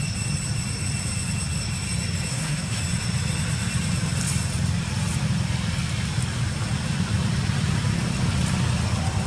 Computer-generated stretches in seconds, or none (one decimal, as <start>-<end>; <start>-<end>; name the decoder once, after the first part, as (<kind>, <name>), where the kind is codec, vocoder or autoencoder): 2.3-2.8 (codec, SNAC)